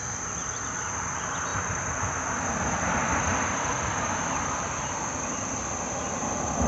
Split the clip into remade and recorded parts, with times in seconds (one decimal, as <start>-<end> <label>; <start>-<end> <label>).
0.0-6.7 recorded

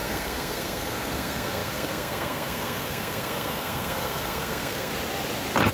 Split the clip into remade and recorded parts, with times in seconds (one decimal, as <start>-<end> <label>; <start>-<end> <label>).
0.0-4.9 remade; 4.9-5.7 recorded

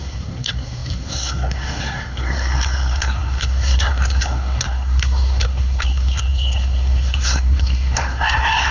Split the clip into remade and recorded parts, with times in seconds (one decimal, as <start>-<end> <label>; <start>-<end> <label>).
0.0-8.7 remade

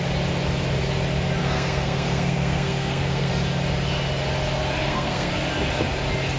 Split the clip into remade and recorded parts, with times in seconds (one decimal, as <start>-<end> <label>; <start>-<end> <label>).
0.0-1.4 recorded; 1.4-3.3 remade; 3.3-4.8 recorded; 4.8-5.3 remade; 5.3-6.4 recorded

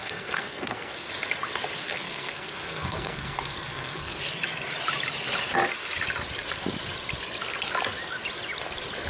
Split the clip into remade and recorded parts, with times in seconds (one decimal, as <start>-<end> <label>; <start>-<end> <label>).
0.0-1.1 remade; 1.1-1.8 recorded; 1.8-4.2 remade; 4.2-9.1 recorded

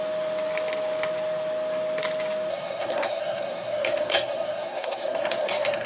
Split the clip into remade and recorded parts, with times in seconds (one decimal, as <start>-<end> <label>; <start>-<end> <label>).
0.0-2.5 recorded; 2.5-5.9 remade

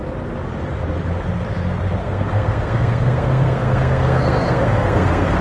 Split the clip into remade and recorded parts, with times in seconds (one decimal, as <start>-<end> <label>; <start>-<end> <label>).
0.0-2.0 recorded; 2.0-5.4 remade

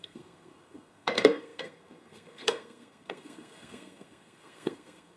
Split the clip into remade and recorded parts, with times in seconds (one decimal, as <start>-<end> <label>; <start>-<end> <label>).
0.0-5.2 remade